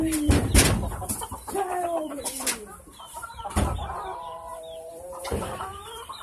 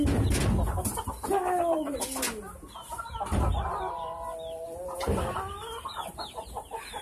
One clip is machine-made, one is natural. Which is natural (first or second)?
second